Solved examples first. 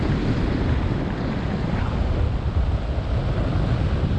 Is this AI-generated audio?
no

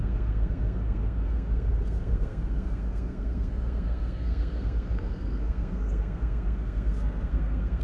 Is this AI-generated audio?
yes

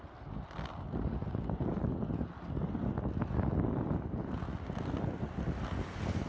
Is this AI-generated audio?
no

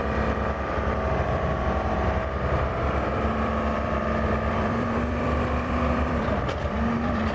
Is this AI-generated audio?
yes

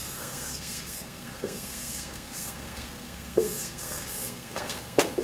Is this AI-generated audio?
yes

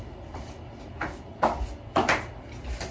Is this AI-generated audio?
no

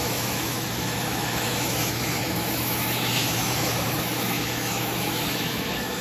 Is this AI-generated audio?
yes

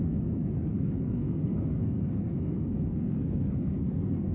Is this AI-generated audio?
yes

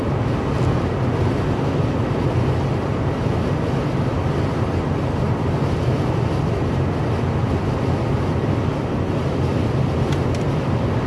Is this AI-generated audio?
no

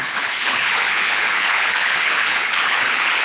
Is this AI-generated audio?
yes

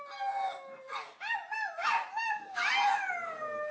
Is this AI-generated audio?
no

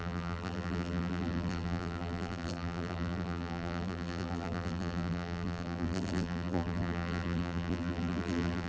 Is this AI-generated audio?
yes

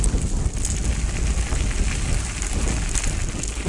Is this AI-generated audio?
no